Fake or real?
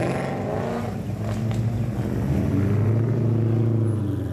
real